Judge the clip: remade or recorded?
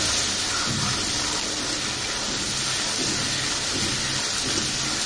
recorded